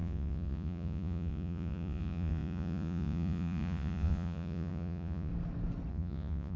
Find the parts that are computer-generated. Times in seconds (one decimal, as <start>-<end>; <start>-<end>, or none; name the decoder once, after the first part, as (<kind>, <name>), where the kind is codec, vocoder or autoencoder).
0.0-5.3 (vocoder, Vocos); 5.9-6.6